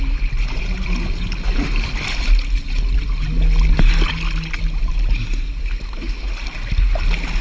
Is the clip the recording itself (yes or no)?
yes